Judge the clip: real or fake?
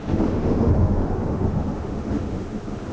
fake